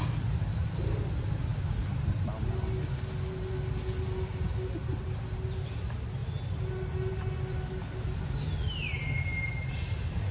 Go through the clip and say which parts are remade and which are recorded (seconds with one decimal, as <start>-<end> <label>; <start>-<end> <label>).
0.0-10.3 recorded